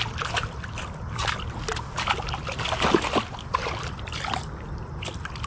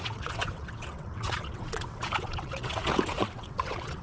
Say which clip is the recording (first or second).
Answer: first